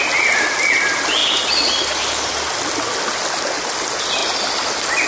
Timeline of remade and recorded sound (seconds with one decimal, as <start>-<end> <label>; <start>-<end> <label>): 0.0-5.1 recorded